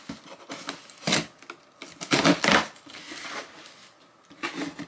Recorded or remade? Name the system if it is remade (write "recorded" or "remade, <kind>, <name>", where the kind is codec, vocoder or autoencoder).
recorded